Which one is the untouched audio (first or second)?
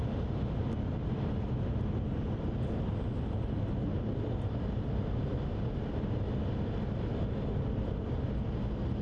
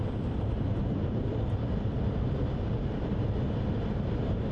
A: first